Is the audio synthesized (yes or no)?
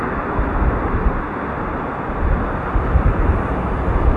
no